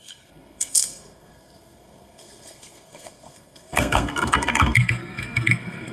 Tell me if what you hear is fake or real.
fake